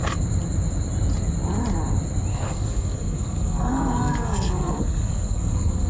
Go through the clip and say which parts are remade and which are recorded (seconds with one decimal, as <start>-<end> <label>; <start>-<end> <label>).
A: 0.0-2.3 recorded; 2.3-5.9 remade